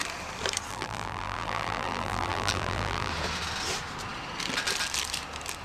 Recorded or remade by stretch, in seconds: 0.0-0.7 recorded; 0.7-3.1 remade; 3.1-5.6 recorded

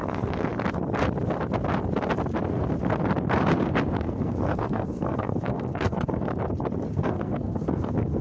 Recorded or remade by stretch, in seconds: 0.0-0.5 remade; 0.5-4.0 recorded; 4.0-6.3 remade; 6.3-6.9 recorded; 6.9-8.2 remade